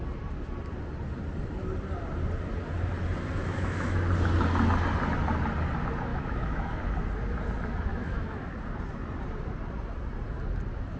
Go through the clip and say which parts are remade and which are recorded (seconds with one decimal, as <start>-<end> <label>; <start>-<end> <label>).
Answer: 0.0-3.4 recorded; 3.4-4.0 remade; 4.0-6.1 recorded; 6.1-6.8 remade; 6.8-7.9 recorded; 7.9-8.5 remade; 8.5-11.0 recorded